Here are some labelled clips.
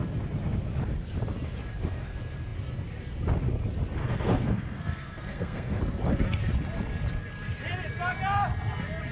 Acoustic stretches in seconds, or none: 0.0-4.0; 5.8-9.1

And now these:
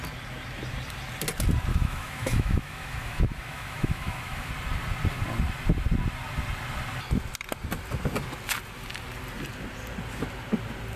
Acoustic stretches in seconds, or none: 0.0-1.7; 4.5-11.0

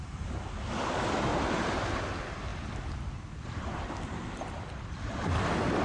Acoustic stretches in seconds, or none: 0.0-1.3; 2.0-5.8

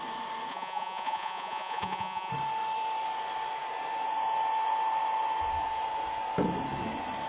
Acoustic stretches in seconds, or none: 0.0-0.5; 2.3-7.3

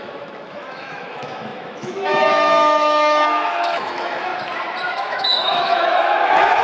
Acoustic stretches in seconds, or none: 4.3-4.9

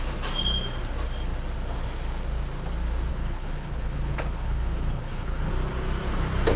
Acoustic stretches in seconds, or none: 0.0-3.1; 5.5-6.6

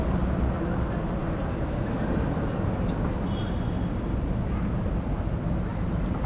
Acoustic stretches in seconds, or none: 0.0-6.3

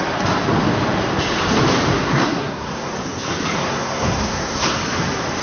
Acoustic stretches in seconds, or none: 0.0-1.9; 2.9-3.6; 4.8-5.4